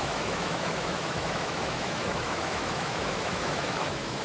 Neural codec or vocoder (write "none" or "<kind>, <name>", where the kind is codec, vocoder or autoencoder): autoencoder, DAC-VAE